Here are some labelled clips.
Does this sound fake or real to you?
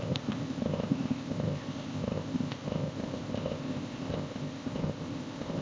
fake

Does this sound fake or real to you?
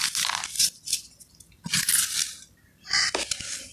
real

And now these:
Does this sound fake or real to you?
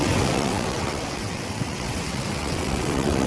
fake